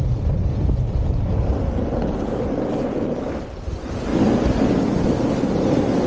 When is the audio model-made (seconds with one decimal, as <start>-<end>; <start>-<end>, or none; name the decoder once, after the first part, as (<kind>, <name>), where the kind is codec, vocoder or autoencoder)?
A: none